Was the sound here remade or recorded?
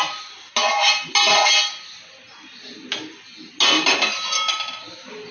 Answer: recorded